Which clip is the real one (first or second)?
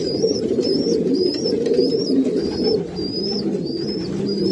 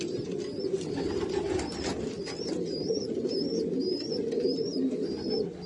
second